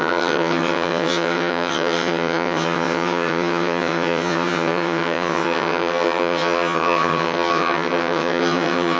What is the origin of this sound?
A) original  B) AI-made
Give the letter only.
B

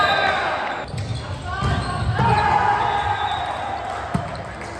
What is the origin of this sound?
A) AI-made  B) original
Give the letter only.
B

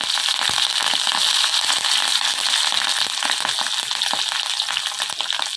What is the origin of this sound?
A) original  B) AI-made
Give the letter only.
A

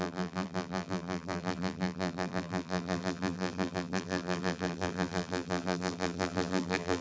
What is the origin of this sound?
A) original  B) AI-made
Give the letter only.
B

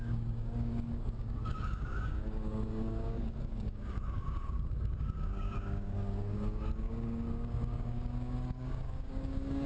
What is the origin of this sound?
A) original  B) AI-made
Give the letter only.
B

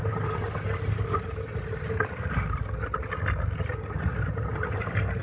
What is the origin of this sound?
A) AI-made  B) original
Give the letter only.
B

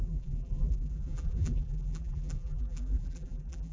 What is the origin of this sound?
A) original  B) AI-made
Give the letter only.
B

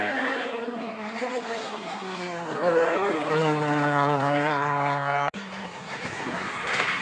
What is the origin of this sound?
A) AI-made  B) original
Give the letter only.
A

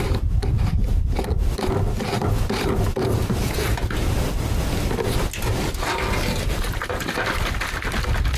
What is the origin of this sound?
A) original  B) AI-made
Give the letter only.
A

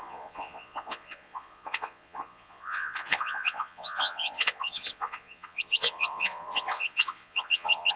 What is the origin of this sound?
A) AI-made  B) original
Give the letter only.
A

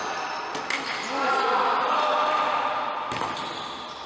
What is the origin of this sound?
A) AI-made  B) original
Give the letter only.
B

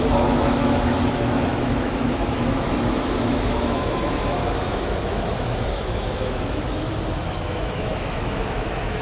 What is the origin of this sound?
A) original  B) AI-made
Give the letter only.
B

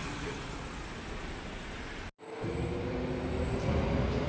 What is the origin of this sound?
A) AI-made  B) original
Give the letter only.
B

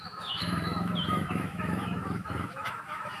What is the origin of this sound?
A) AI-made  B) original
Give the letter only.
A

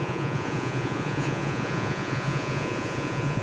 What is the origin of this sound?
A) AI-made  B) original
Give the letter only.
A